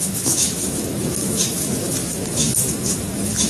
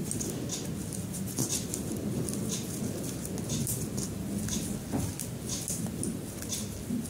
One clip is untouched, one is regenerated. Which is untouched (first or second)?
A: second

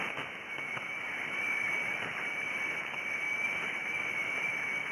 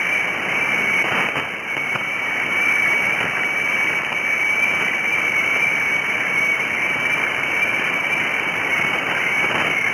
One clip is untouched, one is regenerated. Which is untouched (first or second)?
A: second